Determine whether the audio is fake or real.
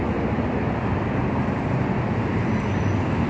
real